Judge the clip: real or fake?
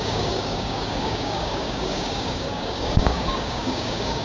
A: fake